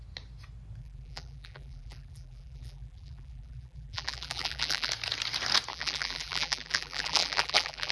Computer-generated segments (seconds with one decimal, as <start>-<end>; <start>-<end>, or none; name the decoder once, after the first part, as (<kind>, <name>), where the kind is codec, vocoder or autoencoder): 0.8-4.9 (vocoder, BigVGAN v2); 5.7-7.9